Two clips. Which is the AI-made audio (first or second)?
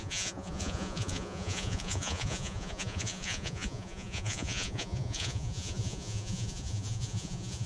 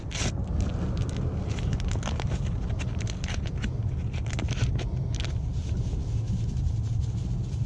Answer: first